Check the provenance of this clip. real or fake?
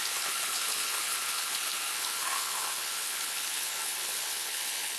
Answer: fake